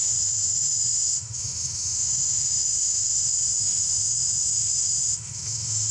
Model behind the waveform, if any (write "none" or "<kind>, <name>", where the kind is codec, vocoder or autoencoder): autoencoder, DAC-VAE